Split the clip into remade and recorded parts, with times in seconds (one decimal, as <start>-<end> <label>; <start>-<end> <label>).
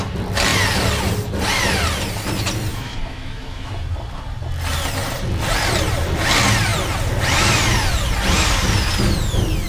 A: 0.0-2.7 recorded; 2.7-3.7 remade; 3.7-9.7 recorded